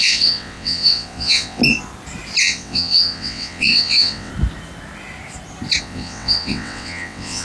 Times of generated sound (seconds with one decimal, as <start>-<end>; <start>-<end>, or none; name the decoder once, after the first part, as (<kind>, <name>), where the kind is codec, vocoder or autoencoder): 0.0-1.6 (vocoder, WaveNeXt); 2.4-4.3; 5.8-7.4